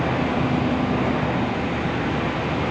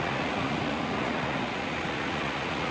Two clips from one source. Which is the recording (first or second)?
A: first